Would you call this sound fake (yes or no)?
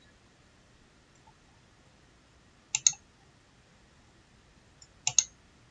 no